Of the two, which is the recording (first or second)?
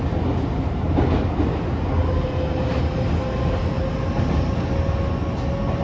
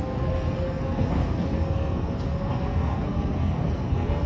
first